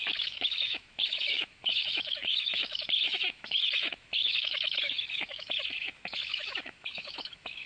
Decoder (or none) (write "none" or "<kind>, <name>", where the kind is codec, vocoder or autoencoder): autoencoder, DAC-VAE